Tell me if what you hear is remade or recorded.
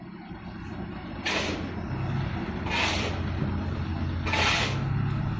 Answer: recorded